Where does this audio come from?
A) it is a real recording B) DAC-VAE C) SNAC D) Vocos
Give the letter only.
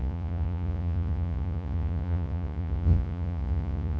D